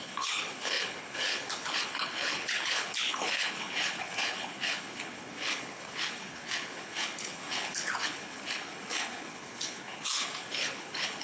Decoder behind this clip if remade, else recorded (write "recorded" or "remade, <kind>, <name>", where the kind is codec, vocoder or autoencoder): remade, codec, HILCodec